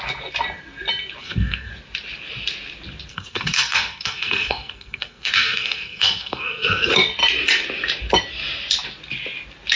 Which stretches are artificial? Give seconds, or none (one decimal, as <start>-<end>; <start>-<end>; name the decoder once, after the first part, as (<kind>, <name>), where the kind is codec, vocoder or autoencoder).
1.2-1.7 (codec, SNAC); 3.1-6.9